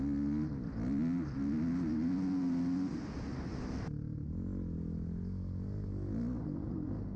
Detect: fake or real real